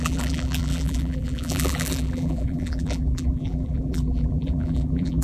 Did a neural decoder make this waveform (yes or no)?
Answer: yes